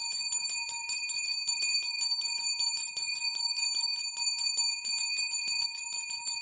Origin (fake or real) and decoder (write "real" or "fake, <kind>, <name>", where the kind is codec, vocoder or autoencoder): fake, vocoder, BigVGAN v2